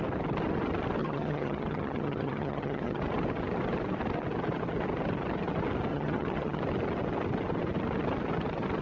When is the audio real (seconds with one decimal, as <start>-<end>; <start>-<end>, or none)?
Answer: 0.0-1.0; 3.0-5.9; 6.6-8.8